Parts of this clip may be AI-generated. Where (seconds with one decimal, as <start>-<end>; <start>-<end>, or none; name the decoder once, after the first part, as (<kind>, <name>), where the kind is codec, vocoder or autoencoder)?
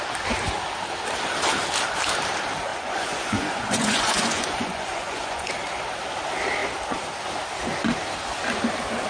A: 2.7-5.5 (vocoder, Vocos)